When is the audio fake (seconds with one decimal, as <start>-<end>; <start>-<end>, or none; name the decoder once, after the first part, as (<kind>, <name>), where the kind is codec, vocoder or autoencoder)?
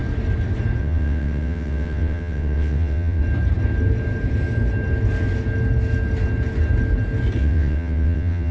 0.8-3.2 (vocoder, WaveNeXt); 7.4-8.5